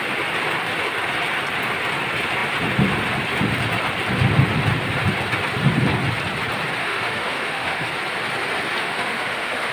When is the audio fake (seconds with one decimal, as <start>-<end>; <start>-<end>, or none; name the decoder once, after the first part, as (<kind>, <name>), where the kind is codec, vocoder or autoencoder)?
6.8-7.9 (autoencoder, DAC-VAE); 8.8-9.7